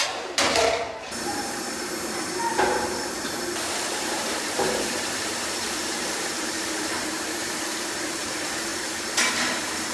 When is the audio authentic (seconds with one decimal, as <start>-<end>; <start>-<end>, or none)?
8.7-9.3